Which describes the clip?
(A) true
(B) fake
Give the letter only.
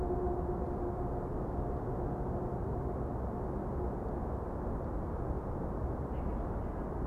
A